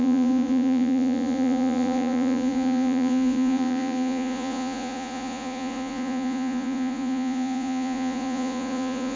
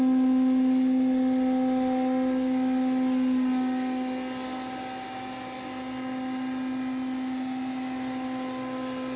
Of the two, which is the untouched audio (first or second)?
second